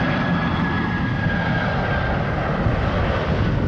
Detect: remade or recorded recorded